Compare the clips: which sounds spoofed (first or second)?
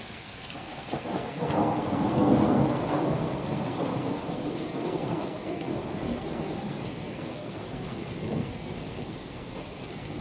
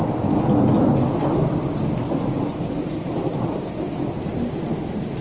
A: first